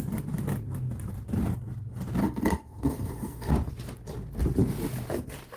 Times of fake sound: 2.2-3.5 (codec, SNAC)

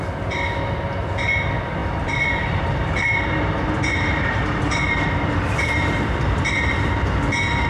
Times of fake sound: 1.8-6.4 (vocoder, BigVGAN v2)

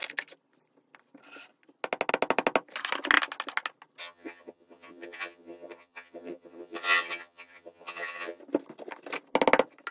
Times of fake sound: 4.0-8.4 (vocoder, HiFi-GAN)

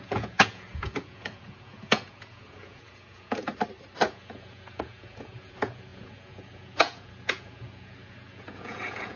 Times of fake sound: 0.0-3.5 (vocoder, Vocos); 4.1-9.2

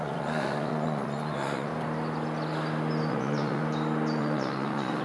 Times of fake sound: 0.0-1.7 (vocoder, Vocos); 3.1-3.6; 4.2-5.0

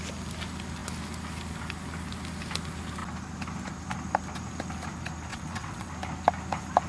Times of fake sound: 5.3-5.9 (vocoder, WaveNeXt)

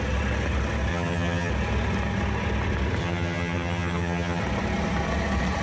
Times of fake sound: 0.9-1.5 (vocoder, HiFi-GAN); 3.0-4.4

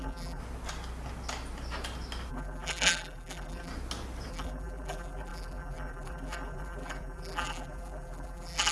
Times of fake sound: 0.0-0.4 (vocoder, BigVGAN v2); 2.3-3.7; 4.3-8.7